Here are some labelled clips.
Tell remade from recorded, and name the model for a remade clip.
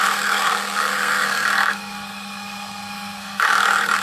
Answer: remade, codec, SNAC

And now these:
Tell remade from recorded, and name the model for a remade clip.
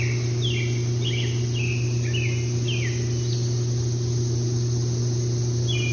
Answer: recorded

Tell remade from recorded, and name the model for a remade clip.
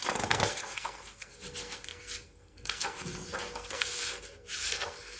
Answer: remade, codec, SNAC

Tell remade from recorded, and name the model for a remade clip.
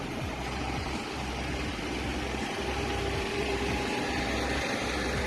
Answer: remade, vocoder, BigVGAN v2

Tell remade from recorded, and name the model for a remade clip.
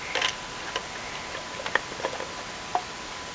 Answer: recorded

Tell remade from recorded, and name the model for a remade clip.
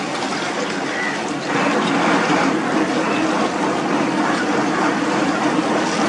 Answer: recorded